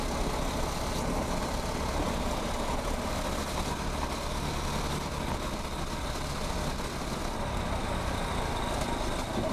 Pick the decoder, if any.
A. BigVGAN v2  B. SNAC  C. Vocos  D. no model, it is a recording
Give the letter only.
D